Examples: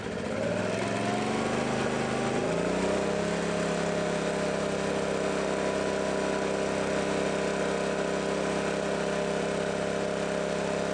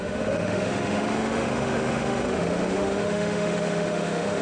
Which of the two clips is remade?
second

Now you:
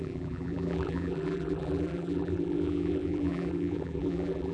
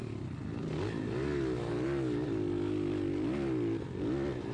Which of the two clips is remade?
first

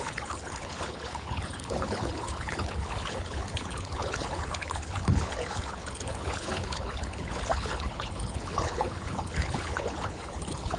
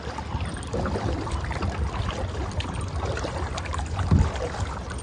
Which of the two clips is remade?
first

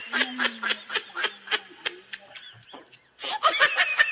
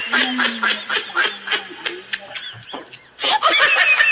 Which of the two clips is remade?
first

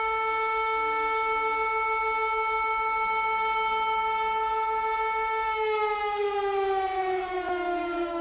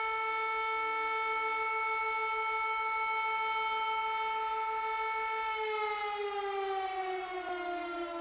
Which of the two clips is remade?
first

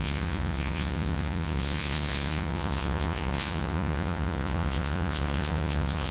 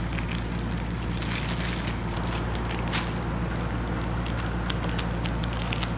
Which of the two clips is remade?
first